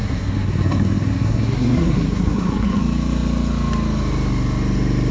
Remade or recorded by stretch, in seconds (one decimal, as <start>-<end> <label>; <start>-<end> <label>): 0.0-2.8 remade; 2.8-5.1 recorded